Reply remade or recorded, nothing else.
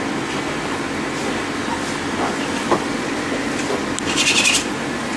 recorded